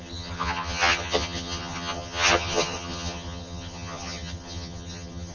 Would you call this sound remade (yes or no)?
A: yes